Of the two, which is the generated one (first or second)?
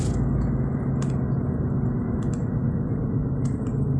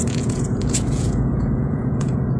second